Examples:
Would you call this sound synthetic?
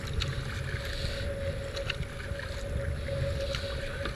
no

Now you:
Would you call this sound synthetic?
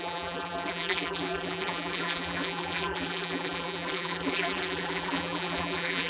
yes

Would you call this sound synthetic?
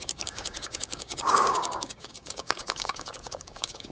yes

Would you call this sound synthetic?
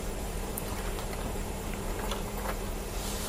yes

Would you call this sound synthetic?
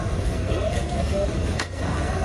yes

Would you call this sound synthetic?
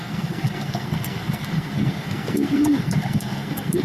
yes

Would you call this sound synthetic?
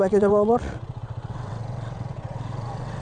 yes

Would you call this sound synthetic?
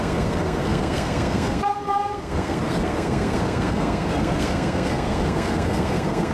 yes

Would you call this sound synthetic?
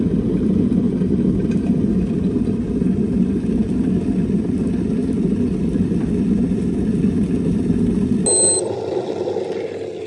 no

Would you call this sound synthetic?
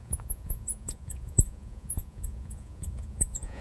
yes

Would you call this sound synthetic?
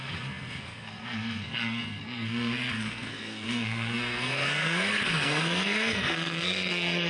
yes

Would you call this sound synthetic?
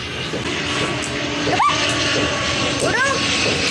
no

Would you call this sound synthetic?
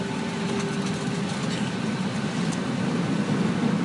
no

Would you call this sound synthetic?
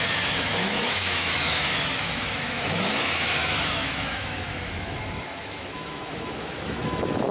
yes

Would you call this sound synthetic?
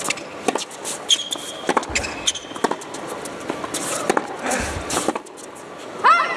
no